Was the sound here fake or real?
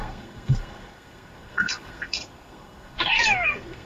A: fake